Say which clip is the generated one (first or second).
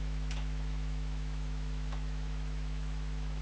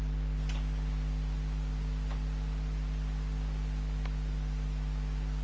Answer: first